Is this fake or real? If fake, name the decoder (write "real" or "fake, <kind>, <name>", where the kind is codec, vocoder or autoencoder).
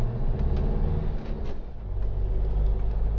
real